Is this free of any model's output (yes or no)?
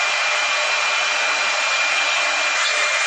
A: yes